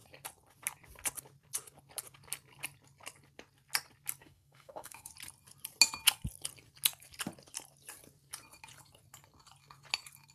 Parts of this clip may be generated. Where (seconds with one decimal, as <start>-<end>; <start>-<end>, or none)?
4.2-5.1